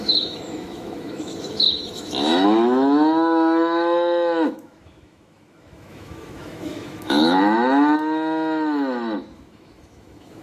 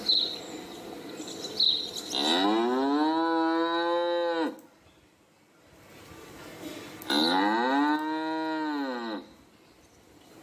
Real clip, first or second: second